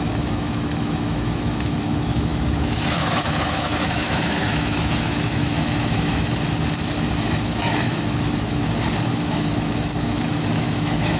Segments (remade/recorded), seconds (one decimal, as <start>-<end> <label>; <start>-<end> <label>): 0.0-6.3 remade; 6.3-7.2 recorded; 7.2-8.6 remade; 8.6-9.2 recorded; 9.2-11.2 remade